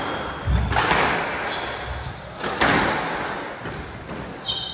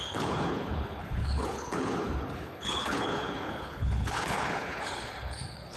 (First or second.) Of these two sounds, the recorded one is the first